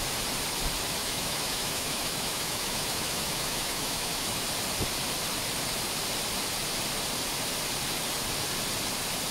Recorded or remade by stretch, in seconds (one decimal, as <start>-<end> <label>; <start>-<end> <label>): 0.0-1.0 recorded; 1.0-4.5 remade; 4.5-9.3 recorded